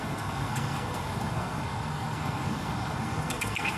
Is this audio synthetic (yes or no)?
yes